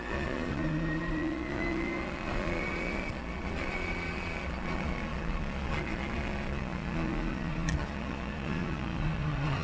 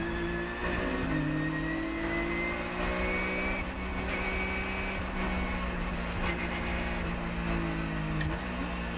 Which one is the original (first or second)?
second